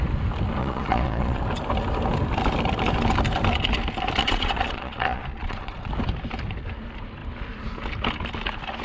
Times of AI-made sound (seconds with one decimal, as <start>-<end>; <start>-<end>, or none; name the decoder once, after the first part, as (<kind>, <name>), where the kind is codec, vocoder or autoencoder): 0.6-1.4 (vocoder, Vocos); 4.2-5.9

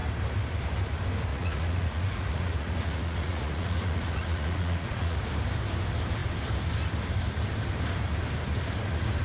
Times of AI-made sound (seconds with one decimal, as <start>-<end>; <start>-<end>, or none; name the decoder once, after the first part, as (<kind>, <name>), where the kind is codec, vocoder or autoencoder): 1.3-5.2 (vocoder, Vocos)

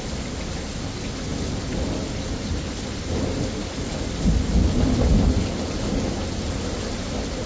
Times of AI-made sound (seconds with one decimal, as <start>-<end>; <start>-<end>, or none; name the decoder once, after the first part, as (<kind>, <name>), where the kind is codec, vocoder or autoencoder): none

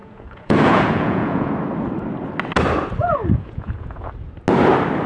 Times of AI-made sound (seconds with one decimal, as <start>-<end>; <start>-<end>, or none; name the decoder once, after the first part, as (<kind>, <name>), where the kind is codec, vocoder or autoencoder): 0.0-1.5 (vocoder, Vocos); 3.0-4.1

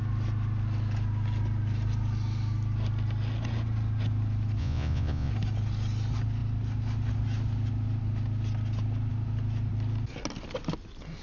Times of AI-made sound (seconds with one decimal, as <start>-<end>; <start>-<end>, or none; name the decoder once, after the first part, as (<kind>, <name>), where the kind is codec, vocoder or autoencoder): 4.6-5.3 (vocoder, Vocos)

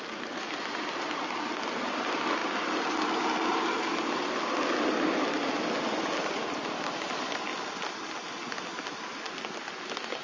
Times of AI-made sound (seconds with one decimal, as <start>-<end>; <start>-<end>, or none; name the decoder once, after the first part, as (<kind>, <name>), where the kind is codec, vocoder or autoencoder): none

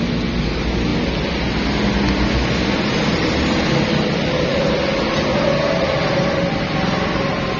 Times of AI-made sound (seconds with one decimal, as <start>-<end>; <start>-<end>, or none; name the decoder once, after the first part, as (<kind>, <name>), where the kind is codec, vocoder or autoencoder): none